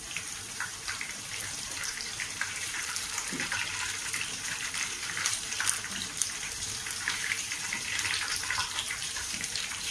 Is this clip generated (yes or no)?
yes